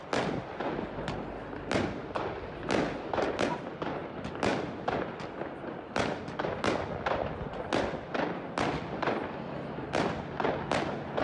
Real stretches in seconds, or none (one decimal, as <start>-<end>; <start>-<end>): 0.0-11.2